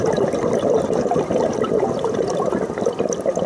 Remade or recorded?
recorded